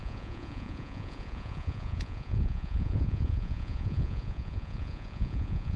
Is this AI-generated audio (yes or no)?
yes